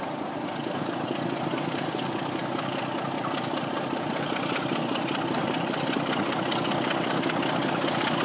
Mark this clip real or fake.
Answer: real